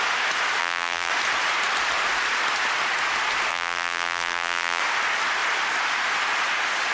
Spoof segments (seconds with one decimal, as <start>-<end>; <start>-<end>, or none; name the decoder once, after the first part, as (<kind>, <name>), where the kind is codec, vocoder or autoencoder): 0.6-1.1 (vocoder, BigVGAN v2); 3.5-4.8